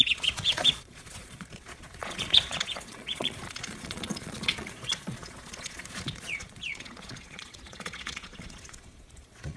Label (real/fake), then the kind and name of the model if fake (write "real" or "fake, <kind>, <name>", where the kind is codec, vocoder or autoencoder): fake, vocoder, Vocos